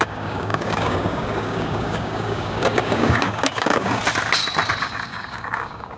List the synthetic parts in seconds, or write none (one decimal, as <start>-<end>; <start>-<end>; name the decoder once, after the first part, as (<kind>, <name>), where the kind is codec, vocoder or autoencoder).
0.0-4.0 (codec, DAC); 4.8-6.0